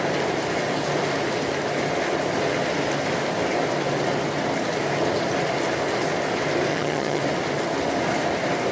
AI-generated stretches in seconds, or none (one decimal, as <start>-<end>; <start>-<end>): 6.7-7.2